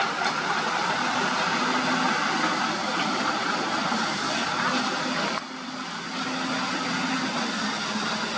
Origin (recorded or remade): recorded